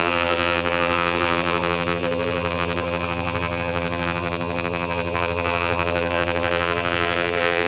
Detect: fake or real fake